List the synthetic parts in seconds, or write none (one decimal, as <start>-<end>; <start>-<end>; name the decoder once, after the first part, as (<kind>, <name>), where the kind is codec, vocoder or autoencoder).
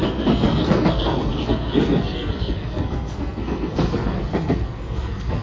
0.0-5.4 (codec, SNAC)